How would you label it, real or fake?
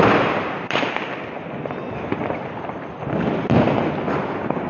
real